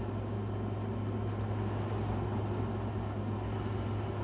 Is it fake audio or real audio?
real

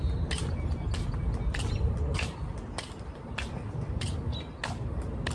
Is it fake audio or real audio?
real